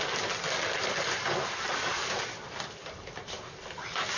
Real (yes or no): yes